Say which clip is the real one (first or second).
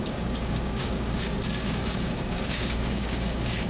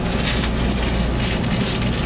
second